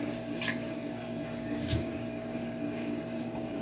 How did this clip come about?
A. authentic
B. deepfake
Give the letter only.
B